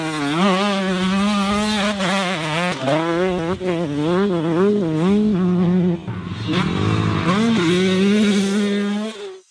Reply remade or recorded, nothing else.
recorded